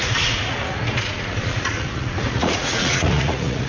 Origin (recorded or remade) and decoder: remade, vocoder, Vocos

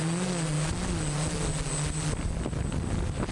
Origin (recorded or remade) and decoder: recorded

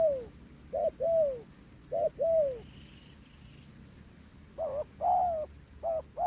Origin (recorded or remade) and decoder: recorded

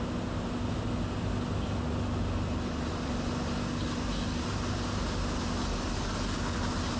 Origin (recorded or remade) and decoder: recorded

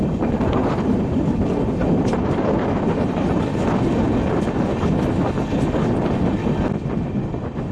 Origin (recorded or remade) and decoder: recorded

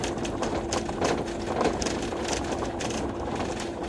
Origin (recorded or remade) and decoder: recorded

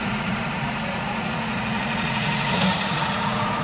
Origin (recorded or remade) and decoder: remade, vocoder, Vocos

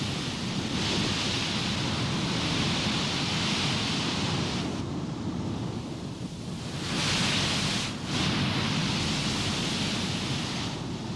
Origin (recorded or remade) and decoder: recorded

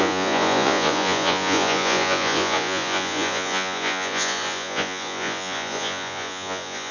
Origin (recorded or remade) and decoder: remade, vocoder, Vocos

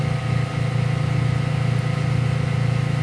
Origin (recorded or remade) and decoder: recorded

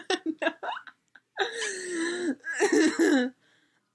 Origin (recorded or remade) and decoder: recorded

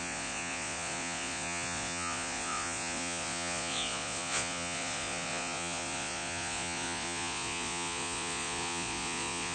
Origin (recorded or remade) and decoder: remade, vocoder, Vocos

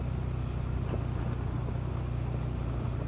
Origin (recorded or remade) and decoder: recorded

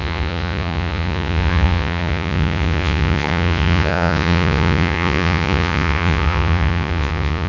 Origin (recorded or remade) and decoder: remade, vocoder, Vocos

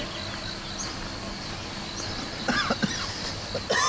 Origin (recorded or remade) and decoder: recorded